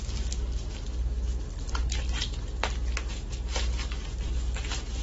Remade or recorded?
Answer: recorded